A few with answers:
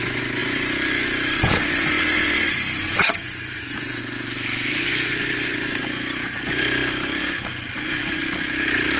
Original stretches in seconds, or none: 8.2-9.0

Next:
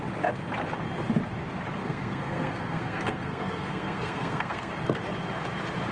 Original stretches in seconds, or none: 0.0-1.8; 4.7-5.9

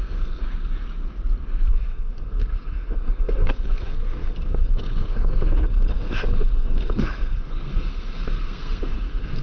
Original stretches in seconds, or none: 0.4-1.7

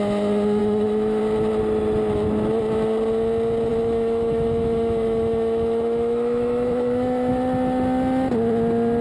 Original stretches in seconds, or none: 0.0-0.6; 1.2-3.7; 7.3-9.0

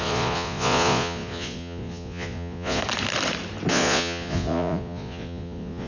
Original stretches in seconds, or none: 2.8-3.7

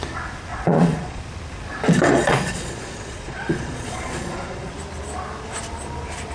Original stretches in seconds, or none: 0.0-0.5; 1.2-2.1; 4.7-6.3

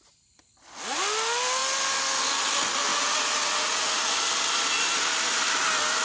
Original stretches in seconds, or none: 0.0-2.9; 4.1-6.0